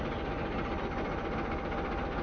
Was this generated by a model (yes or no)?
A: no